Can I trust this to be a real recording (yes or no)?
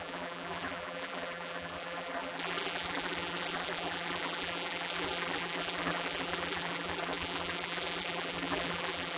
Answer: no